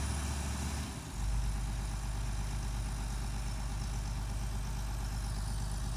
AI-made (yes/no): no